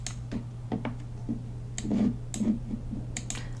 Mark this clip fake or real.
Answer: real